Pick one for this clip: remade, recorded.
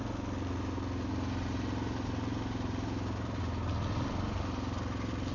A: recorded